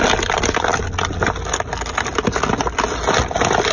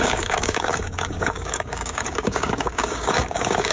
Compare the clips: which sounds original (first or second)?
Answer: first